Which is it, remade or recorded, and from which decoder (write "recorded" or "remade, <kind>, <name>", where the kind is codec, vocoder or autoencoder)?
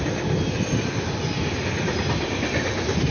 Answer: recorded